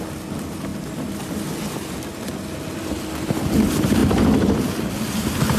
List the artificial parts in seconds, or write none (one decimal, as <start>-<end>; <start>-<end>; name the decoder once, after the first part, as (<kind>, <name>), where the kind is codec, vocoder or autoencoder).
0.0-0.7 (vocoder, BigVGAN v2); 2.1-5.6